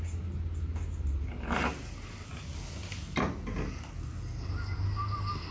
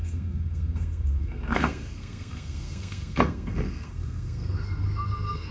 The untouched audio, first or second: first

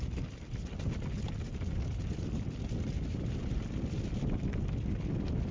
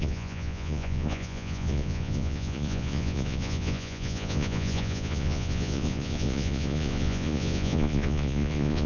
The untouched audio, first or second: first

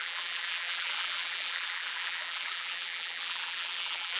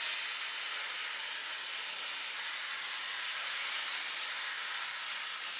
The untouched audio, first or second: second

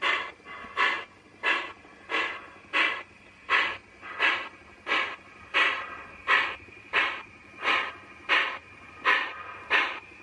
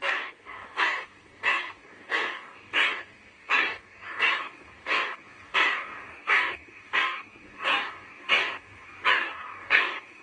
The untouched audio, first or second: first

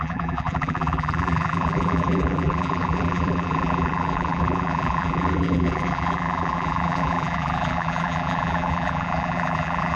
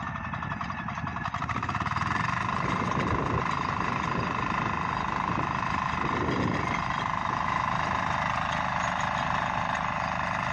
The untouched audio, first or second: second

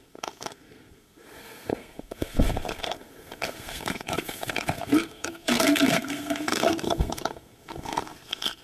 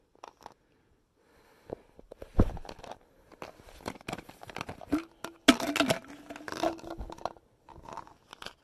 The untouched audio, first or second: second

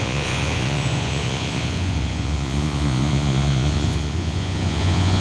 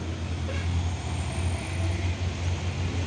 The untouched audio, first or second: second